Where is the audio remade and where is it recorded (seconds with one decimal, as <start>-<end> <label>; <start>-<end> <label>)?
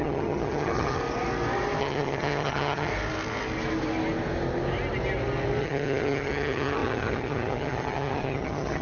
0.0-1.0 remade; 1.0-1.8 recorded; 1.8-2.9 remade; 2.9-5.6 recorded; 5.6-8.8 remade